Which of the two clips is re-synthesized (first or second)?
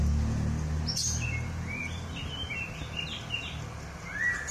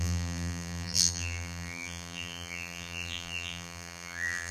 second